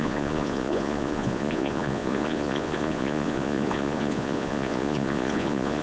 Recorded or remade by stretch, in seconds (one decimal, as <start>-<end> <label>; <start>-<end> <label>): 0.0-5.8 remade